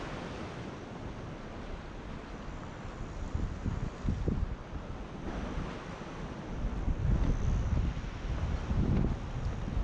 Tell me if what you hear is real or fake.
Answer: real